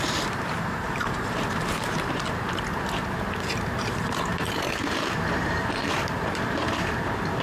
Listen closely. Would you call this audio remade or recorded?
remade